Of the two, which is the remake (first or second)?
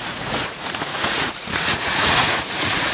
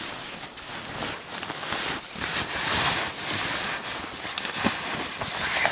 first